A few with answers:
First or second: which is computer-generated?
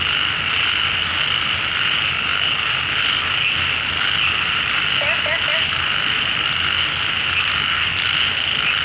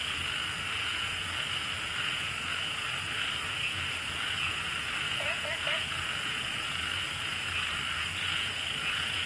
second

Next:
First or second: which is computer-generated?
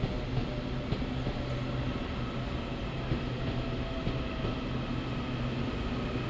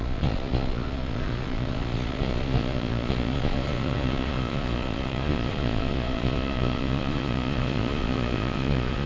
second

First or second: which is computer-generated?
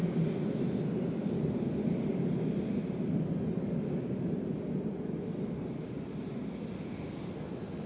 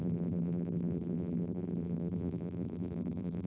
second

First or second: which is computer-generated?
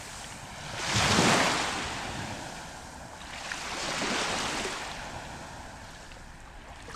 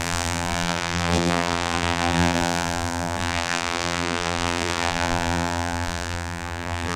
second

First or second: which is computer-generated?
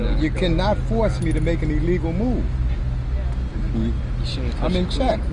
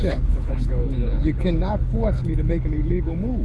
second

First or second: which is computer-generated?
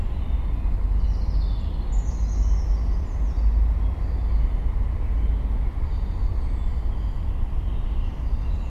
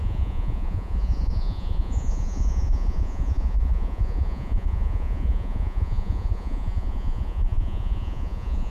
second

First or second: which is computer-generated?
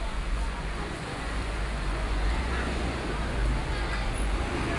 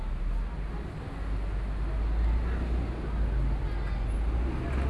first